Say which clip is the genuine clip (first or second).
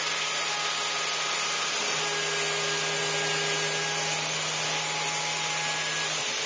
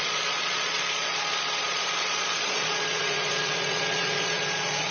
first